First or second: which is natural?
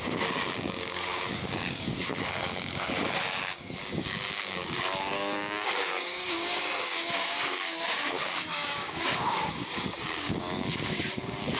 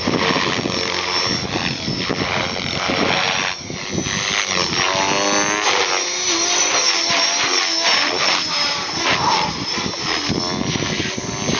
second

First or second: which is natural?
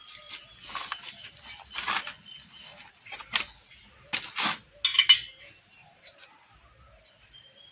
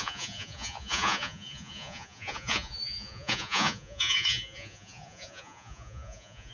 first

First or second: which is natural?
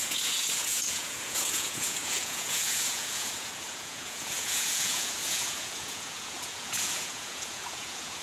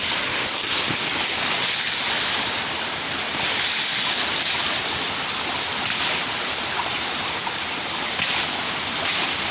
second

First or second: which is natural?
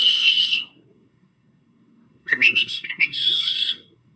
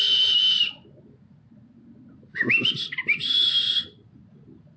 second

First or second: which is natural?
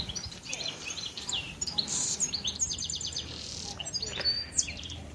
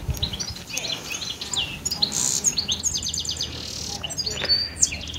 second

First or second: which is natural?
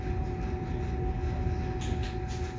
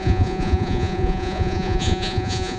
first